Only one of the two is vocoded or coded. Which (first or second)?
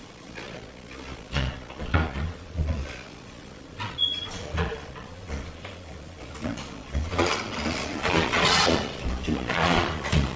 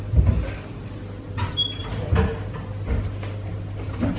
first